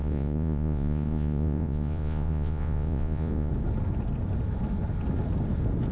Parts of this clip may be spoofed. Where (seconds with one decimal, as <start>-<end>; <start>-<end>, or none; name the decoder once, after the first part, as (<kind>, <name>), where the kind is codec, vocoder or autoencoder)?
0.0-3.5 (vocoder, Vocos)

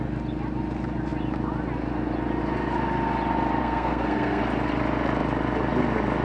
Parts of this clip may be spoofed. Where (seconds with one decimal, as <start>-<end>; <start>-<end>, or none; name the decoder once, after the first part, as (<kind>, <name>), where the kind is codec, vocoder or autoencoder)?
3.6-4.4 (codec, SNAC)

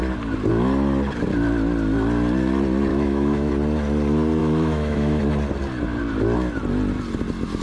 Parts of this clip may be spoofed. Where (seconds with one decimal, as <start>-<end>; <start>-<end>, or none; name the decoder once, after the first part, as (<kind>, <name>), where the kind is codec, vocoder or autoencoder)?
2.9-3.5 (autoencoder, DAC-VAE); 4.4-5.2

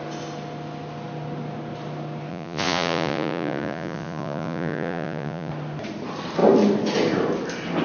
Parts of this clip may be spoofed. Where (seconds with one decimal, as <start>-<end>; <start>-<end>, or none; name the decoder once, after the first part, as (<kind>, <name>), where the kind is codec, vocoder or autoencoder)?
2.3-5.5 (vocoder, Vocos)

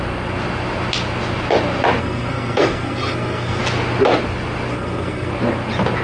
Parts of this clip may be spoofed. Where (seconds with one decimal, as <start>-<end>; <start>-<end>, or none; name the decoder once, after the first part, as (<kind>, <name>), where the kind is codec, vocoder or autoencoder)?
2.0-3.6 (codec, SNAC); 4.7-5.3

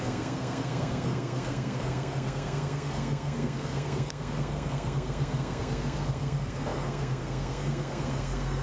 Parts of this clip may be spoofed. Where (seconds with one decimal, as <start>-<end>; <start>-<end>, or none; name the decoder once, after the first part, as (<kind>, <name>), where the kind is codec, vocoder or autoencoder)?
0.0-8.6 (codec, SNAC)

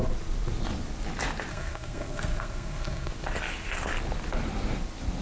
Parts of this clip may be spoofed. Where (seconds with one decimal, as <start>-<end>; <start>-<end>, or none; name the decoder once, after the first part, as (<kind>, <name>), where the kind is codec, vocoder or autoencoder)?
1.5-3.1 (codec, SNAC)